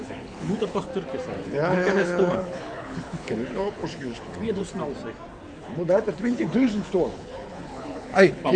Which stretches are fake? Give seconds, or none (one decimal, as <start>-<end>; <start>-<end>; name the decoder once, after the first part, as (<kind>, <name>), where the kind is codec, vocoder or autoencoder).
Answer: 0.0-0.9 (codec, HILCodec); 1.4-4.6; 5.6-8.6

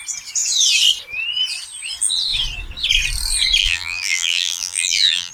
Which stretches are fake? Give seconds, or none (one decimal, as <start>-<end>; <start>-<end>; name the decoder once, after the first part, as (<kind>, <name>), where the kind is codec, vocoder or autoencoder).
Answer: 3.6-5.3 (vocoder, BigVGAN v2)

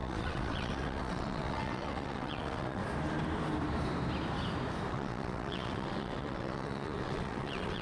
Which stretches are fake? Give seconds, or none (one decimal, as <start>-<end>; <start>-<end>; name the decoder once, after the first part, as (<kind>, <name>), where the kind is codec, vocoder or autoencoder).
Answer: 0.0-2.8 (vocoder, WaveNeXt); 4.9-7.8

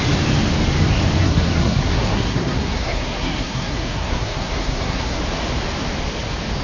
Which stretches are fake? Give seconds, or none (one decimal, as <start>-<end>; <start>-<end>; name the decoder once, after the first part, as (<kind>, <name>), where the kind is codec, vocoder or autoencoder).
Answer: 1.2-5.2 (codec, SNAC)

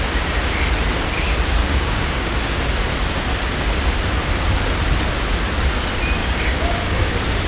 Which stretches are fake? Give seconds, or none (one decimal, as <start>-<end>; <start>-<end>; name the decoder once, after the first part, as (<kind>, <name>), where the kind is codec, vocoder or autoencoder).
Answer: 1.6-2.4 (codec, DAC); 6.2-7.1

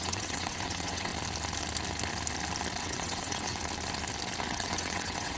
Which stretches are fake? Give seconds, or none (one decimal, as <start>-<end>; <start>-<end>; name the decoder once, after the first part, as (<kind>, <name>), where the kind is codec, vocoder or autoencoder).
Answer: 0.0-1.1 (vocoder, WaveNeXt); 2.8-3.6; 4.5-5.4

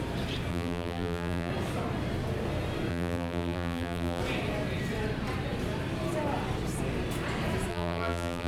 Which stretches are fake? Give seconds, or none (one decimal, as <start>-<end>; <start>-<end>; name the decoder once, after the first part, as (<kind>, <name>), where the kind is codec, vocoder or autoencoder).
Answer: 0.5-1.5 (vocoder, BigVGAN v2); 2.9-4.2; 7.7-8.5